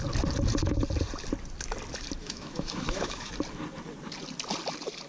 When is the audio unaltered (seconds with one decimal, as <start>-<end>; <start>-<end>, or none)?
0.0-2.2; 3.3-5.1